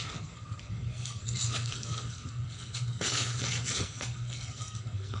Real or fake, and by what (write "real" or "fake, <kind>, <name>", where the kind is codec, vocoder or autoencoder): fake, codec, SNAC